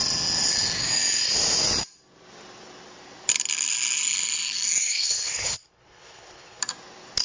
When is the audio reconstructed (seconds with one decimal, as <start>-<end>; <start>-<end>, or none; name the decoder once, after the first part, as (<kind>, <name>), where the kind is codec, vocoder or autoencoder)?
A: 4.8-6.6 (codec, HILCodec)